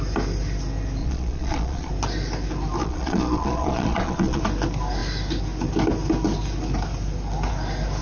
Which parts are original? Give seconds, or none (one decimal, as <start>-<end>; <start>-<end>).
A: 0.0-1.0; 1.9-2.8; 4.4-8.0